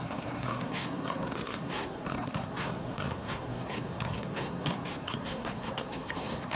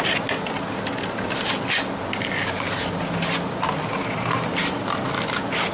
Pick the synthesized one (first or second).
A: first